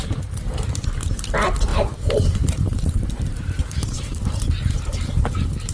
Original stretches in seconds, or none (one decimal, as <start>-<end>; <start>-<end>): 0.0-1.7; 5.1-5.7